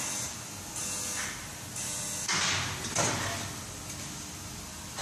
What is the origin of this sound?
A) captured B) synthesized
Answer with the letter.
A